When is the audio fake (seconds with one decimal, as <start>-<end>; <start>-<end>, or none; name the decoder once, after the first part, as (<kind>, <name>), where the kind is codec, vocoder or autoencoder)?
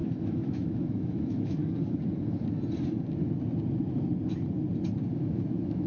0.0-1.6 (autoencoder, DAC-VAE); 5.1-5.9